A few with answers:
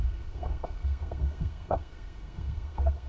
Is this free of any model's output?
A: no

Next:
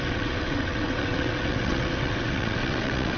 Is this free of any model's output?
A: no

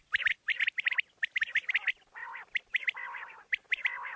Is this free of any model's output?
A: no